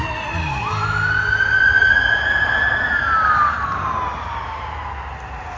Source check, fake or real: real